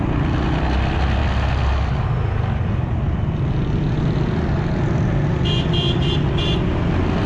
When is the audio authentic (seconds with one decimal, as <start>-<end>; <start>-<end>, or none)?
0.0-7.3